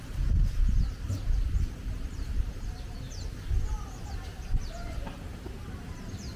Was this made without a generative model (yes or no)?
no